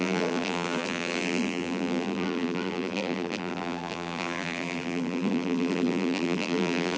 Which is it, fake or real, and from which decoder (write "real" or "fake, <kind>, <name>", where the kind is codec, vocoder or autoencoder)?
fake, vocoder, BigVGAN v2